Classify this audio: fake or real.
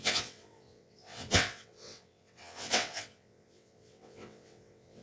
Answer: fake